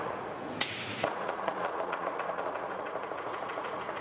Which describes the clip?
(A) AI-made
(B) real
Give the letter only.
A